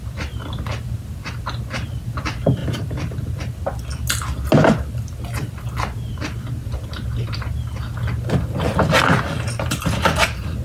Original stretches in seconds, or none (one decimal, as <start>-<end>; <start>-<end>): 0.0-10.6